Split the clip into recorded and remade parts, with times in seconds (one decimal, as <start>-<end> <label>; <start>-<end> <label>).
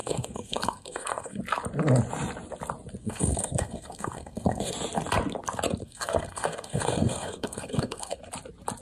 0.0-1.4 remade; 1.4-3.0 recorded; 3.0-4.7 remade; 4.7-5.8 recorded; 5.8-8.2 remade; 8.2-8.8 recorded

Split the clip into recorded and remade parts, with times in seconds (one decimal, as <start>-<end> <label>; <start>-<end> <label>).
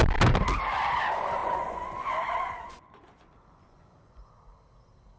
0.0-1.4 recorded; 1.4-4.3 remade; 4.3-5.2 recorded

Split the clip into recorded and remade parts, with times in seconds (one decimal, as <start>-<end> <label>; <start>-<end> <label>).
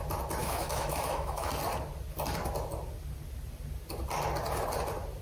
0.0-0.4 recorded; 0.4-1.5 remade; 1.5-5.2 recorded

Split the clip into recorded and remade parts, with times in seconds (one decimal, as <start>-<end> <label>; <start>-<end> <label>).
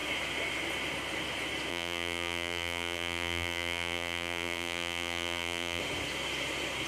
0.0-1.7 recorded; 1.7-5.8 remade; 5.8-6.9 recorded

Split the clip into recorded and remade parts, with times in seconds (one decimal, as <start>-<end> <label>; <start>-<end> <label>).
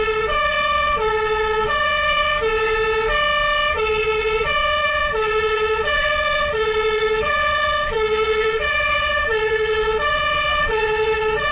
0.0-2.3 remade; 2.3-3.7 recorded; 3.7-11.5 remade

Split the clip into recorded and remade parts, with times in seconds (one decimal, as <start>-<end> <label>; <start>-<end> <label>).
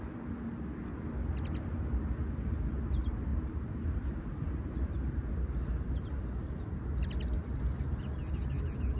0.0-3.3 recorded; 3.3-5.3 remade; 5.3-9.0 recorded